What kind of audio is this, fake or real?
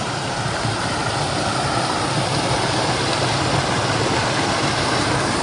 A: real